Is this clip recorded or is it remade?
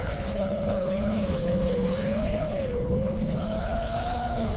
remade